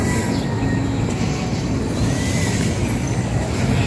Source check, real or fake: real